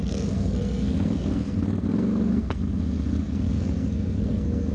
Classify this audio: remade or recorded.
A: remade